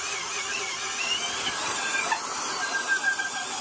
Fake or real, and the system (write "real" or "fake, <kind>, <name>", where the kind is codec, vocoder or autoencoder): fake, vocoder, BigVGAN v2